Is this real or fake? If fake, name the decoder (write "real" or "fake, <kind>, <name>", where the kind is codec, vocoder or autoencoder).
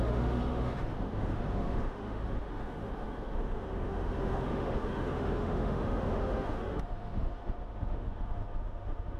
fake, autoencoder, DAC-VAE